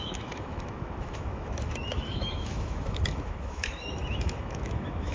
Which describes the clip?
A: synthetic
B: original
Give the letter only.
A